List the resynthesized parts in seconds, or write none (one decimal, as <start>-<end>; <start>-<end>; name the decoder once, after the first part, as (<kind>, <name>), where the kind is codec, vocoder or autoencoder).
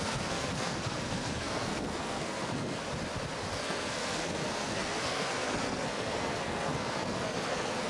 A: 0.0-2.8 (codec, SNAC); 3.5-7.9